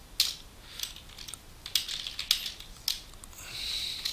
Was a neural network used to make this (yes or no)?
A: no